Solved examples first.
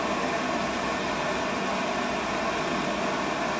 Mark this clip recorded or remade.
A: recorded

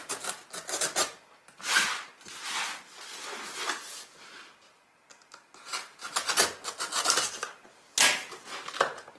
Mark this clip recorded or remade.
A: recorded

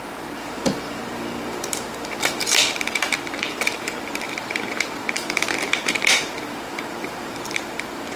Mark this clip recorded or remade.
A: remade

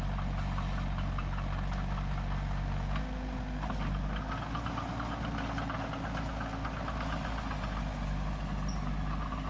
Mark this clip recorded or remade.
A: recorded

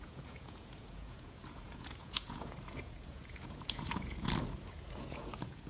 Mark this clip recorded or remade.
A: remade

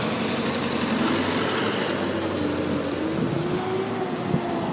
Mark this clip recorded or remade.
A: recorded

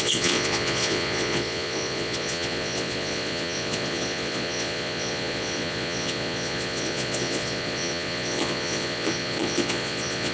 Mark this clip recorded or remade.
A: remade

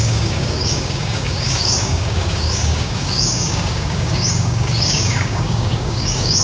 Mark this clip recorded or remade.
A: remade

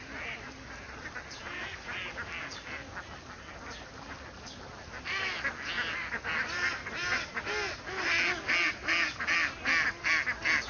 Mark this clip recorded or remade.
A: recorded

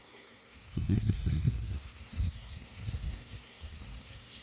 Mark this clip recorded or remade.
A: remade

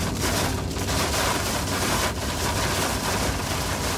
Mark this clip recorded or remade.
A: recorded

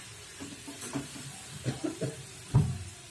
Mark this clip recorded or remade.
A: remade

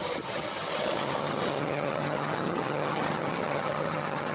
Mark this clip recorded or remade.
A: remade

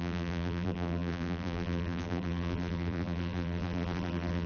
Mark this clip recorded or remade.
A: remade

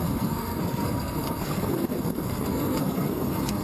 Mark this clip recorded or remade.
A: remade